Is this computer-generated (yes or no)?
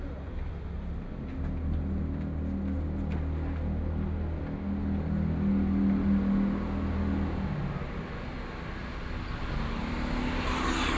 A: no